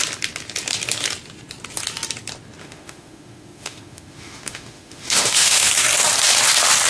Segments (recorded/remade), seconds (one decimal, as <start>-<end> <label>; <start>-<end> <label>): 0.0-2.6 recorded; 2.6-5.7 remade; 5.7-6.9 recorded